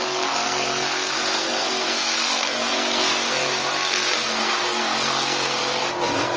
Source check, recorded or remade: remade